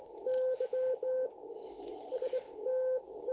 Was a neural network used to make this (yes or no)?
yes